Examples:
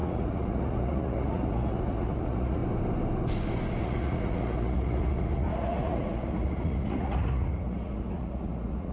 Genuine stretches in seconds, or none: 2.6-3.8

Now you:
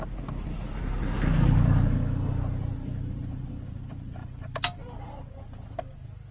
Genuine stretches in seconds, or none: 0.0-6.3

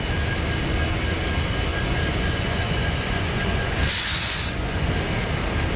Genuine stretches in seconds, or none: 0.0-1.7; 4.9-5.8

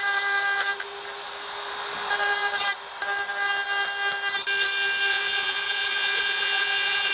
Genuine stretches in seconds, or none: 0.0-5.1

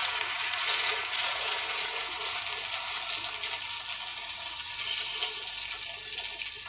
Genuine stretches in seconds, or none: 2.4-4.1; 4.7-6.7